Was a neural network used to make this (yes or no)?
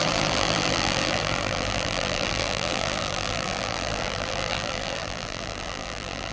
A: yes